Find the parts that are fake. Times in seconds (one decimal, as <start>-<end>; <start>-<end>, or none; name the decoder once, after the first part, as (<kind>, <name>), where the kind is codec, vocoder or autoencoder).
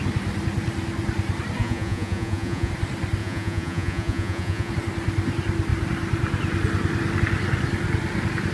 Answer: 1.6-2.7 (vocoder, Vocos); 3.2-4.7